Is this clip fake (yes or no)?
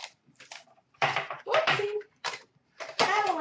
yes